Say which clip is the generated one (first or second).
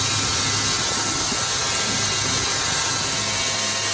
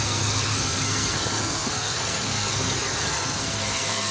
second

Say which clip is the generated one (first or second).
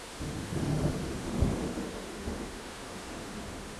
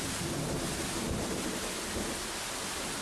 first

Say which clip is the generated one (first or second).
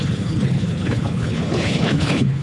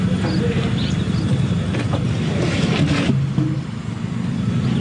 first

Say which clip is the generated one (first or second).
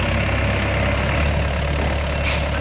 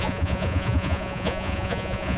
second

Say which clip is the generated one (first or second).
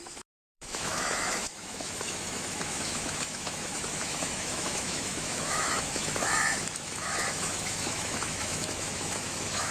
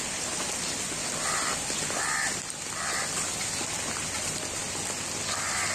first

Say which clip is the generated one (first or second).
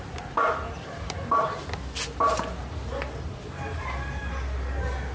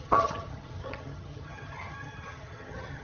second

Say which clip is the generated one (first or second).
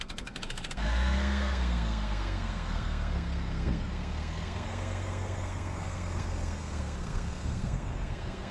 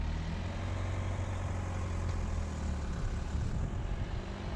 first